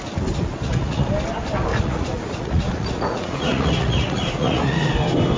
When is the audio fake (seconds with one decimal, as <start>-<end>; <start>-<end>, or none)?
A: 0.6-1.1; 1.7-4.9